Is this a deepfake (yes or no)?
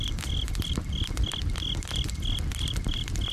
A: no